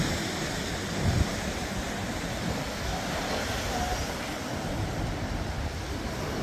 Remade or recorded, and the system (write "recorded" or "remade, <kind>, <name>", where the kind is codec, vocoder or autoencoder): recorded